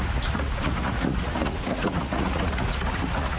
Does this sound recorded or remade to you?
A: remade